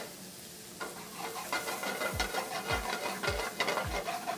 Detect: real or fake real